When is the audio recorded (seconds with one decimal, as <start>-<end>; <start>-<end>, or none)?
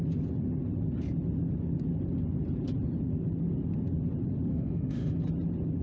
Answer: 0.0-4.5; 5.2-5.8